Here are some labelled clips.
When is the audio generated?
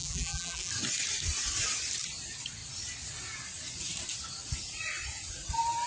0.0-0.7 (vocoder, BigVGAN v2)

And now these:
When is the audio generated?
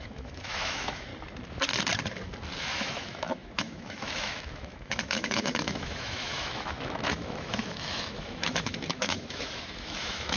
0.0-1.1 (autoencoder, DAC-VAE); 2.6-10.4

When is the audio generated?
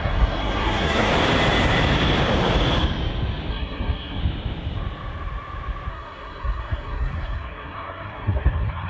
0.0-1.1 (codec, SNAC); 3.5-4.2; 5.9-8.9